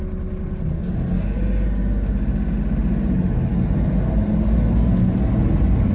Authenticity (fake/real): real